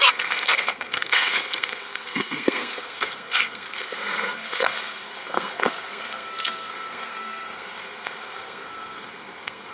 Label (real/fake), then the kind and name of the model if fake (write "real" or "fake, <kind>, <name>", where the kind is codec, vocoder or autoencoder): fake, codec, SNAC